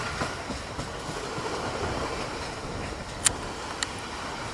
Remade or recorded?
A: recorded